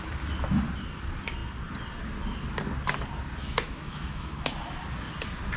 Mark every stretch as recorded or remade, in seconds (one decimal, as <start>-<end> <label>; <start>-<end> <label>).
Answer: 0.0-3.4 recorded; 3.4-4.5 remade; 4.5-5.6 recorded